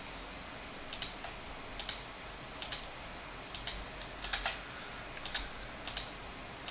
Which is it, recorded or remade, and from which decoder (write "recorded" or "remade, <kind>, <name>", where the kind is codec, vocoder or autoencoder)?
recorded